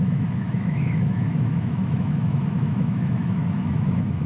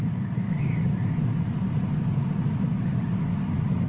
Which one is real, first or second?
second